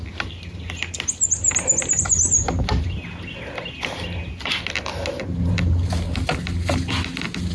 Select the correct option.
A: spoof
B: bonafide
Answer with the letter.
B